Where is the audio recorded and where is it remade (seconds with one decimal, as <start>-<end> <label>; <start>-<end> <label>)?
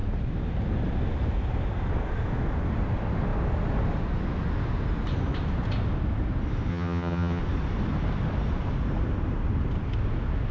0.0-6.7 recorded; 6.7-7.4 remade; 7.4-10.5 recorded